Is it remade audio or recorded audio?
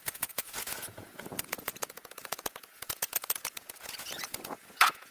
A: remade